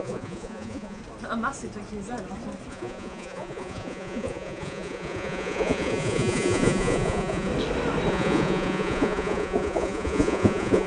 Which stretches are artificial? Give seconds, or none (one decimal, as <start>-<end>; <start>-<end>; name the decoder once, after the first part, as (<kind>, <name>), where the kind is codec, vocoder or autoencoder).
0.0-1.0 (vocoder, Vocos); 2.7-7.5; 8.1-10.9